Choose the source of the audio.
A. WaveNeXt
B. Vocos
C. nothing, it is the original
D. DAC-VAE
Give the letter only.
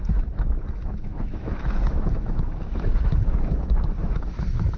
D